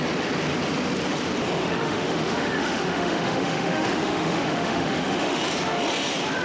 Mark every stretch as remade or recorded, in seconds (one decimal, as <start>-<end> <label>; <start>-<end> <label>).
0.0-1.6 recorded; 1.6-5.4 remade; 5.4-6.4 recorded